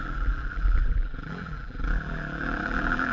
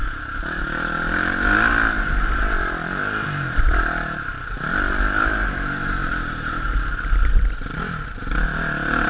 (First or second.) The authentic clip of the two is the second